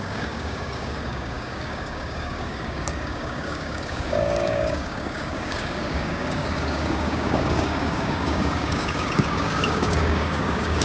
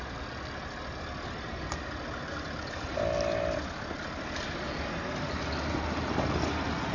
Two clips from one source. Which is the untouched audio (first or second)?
second